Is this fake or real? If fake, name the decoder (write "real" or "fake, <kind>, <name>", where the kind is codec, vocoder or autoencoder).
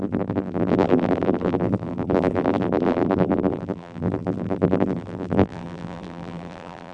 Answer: fake, vocoder, BigVGAN v2